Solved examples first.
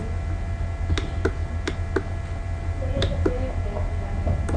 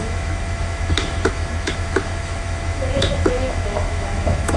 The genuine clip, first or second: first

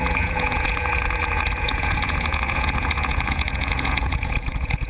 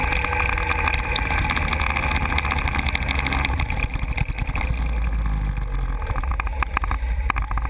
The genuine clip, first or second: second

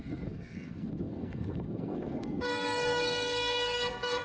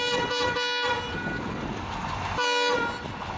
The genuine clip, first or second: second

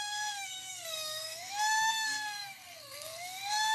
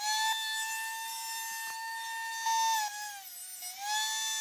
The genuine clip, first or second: second